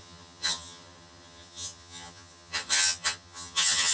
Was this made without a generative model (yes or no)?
no